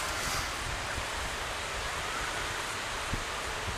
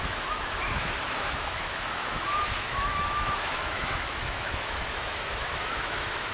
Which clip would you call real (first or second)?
first